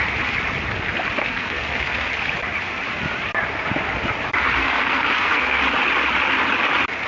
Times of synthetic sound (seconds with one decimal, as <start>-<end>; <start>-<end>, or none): 1.2-2.1; 4.4-5.6